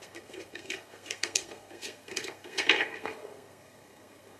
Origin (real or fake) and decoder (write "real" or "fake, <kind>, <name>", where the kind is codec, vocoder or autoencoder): fake, codec, SNAC